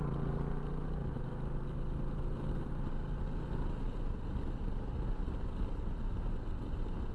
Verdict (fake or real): real